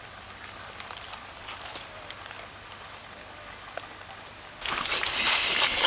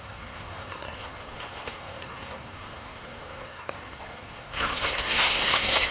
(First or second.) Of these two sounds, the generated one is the second